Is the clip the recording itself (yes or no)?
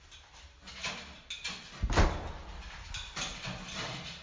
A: yes